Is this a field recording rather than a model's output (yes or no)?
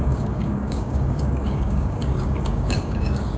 no